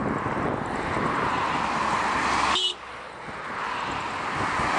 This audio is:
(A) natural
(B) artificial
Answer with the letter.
A